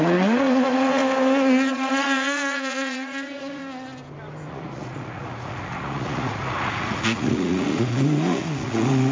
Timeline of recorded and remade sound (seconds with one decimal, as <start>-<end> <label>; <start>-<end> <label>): 0.0-1.0 remade; 1.0-1.7 recorded; 1.7-3.6 remade; 3.6-4.5 recorded; 4.5-9.1 remade